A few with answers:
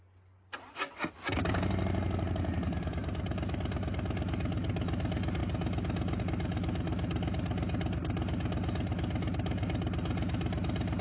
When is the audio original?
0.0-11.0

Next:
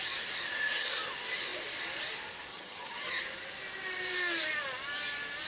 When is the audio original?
0.0-2.5; 3.2-5.5

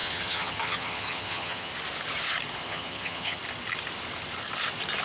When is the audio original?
1.7-2.6; 3.4-5.0

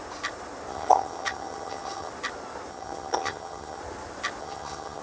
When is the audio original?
0.0-0.7; 2.1-2.7; 3.8-4.4

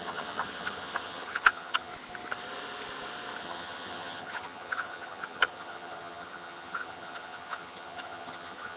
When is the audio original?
1.9-3.4

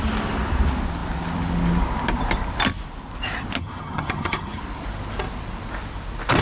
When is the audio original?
0.0-3.6; 4.6-6.4